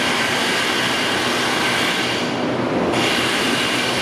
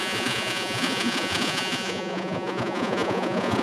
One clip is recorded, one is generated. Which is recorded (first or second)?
first